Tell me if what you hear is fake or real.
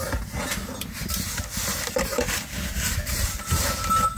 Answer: real